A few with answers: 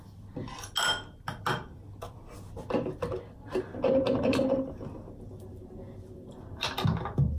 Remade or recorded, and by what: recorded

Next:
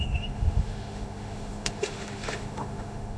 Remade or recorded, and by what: remade, autoencoder, DAC-VAE